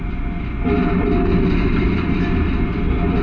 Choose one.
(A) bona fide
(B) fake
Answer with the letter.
A